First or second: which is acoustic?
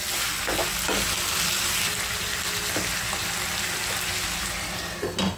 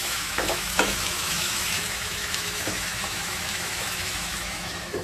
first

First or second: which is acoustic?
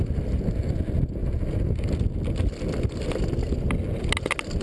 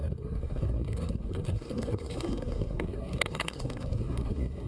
first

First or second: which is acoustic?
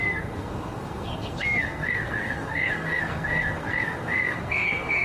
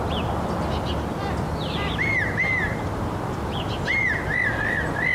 second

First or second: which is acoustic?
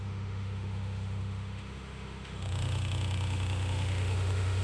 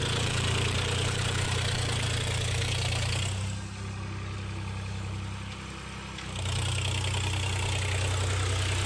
second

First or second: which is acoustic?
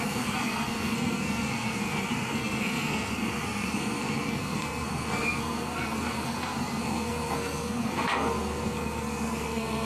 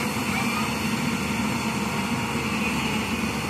second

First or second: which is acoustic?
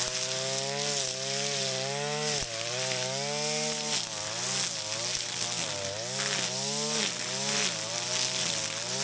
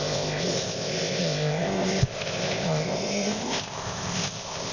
first